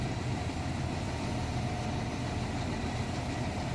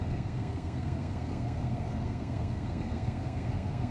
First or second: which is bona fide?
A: first